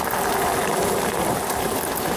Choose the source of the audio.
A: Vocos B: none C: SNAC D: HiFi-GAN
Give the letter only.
B